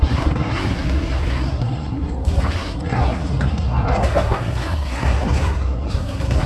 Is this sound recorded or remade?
remade